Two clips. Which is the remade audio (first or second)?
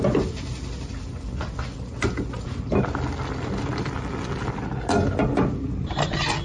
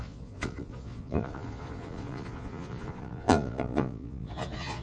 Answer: second